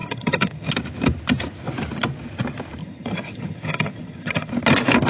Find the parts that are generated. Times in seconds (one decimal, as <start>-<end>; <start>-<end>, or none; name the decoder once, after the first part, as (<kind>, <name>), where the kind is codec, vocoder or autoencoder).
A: 0.0-0.7 (vocoder, HiFi-GAN); 2.8-4.5